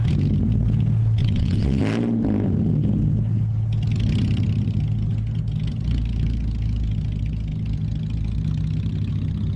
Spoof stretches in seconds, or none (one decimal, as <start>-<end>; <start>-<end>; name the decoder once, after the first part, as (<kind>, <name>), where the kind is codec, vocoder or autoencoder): 1.2-1.8 (vocoder, WaveNeXt)